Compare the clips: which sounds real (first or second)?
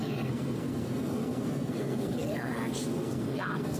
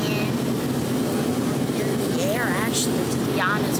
second